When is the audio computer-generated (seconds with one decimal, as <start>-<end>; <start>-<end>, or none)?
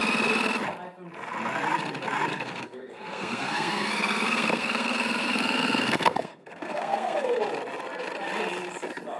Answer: 2.3-7.4